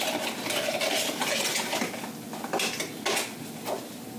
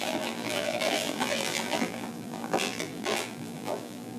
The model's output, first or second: second